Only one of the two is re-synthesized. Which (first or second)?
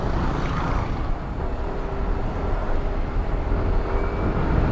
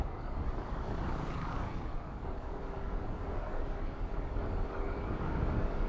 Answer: second